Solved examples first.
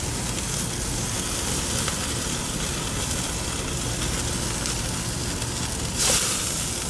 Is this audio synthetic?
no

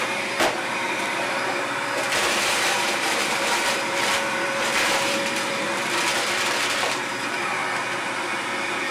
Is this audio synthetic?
yes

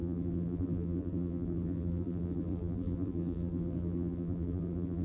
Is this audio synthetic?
yes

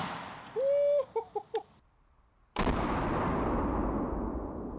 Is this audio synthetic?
no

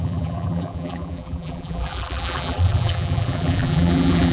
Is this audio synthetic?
yes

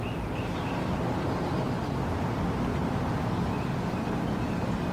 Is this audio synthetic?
no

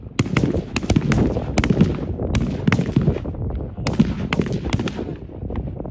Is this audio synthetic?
no